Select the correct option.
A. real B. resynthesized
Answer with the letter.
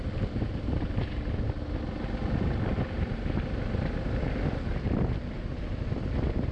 A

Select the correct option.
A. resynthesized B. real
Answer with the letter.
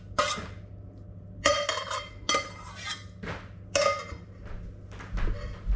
B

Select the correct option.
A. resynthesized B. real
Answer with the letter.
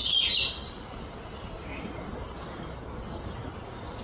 B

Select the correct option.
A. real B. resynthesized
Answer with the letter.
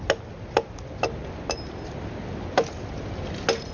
A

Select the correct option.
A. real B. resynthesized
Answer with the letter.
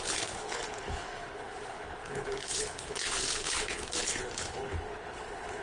B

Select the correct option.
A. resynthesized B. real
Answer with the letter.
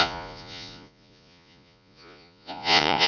A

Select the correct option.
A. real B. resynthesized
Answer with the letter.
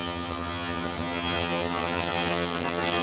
B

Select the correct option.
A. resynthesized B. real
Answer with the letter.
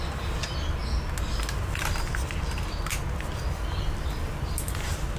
B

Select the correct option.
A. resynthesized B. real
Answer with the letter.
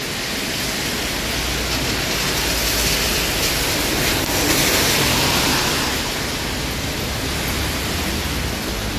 B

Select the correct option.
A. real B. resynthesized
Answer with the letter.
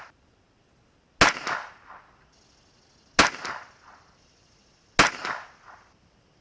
A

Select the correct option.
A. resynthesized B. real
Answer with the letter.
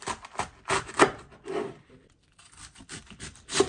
B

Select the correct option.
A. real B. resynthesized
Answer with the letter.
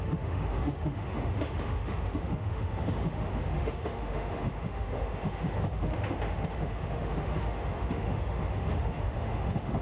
B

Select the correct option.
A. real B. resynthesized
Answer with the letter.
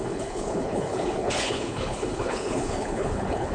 B